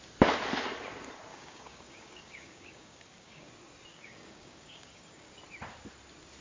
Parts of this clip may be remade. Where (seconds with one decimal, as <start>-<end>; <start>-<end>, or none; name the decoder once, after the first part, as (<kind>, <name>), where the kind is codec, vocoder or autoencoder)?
1.3-3.5 (codec, DAC); 3.9-5.4